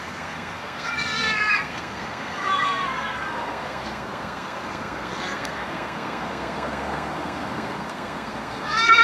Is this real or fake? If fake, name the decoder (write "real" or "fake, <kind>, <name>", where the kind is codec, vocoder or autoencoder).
fake, codec, SNAC